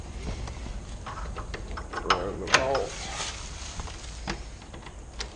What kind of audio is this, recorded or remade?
recorded